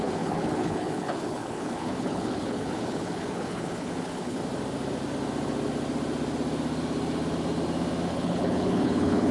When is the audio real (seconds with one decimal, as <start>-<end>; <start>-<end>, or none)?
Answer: 4.4-8.1